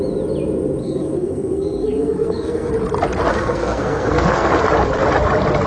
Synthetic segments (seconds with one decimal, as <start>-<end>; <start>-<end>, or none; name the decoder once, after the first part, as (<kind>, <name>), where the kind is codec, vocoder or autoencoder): 0.8-2.7 (codec, SNAC); 3.3-4.5